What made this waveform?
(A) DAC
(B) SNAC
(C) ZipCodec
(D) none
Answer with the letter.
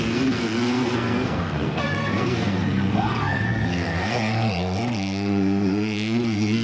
B